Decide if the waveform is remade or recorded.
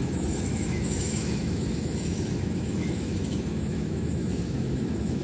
remade